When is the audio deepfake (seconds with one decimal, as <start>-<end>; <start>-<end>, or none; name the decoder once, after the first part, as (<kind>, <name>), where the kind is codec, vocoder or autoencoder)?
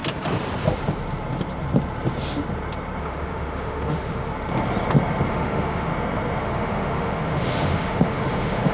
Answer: 3.0-4.3 (autoencoder, DAC-VAE); 5.3-5.9; 6.4-8.7